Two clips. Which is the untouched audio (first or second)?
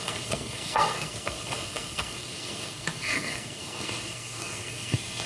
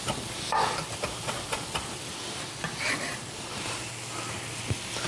second